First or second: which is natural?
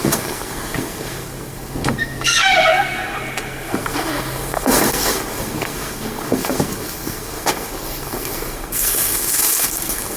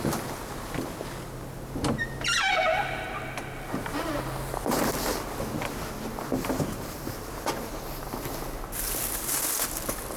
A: second